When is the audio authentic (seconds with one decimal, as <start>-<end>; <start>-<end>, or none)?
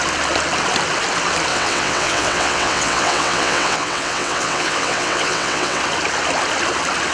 0.0-1.5; 5.8-7.1